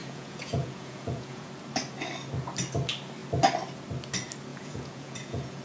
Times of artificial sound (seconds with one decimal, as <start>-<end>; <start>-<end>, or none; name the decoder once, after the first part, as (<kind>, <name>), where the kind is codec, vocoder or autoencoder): 0.0-1.5 (vocoder, Vocos); 4.5-5.6

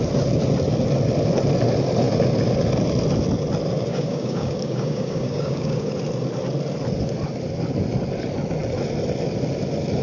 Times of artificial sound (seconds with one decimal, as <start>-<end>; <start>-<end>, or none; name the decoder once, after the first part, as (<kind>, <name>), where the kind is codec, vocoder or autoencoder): 3.9-5.9 (codec, DAC)

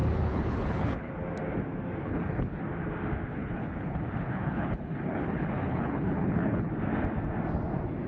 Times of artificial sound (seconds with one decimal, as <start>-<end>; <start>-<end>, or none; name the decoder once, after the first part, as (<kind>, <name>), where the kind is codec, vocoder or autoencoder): 0.0-1.1 (codec, HILCodec); 2.0-2.6; 3.3-6.7

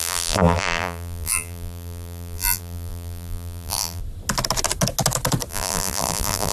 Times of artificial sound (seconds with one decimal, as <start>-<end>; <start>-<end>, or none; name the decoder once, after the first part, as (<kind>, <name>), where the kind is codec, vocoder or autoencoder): 0.0-4.0 (vocoder, BigVGAN v2); 5.5-6.5

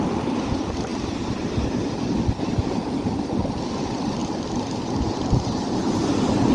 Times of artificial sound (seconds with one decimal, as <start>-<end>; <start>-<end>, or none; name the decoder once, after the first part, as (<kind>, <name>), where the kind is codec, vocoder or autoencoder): none

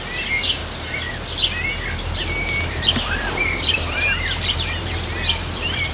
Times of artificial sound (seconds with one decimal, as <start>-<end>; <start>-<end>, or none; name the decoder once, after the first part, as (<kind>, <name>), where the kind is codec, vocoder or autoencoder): 0.0-0.6 (vocoder, BigVGAN v2); 2.7-5.9